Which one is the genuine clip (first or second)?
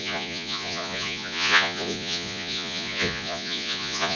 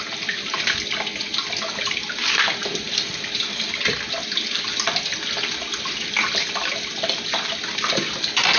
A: second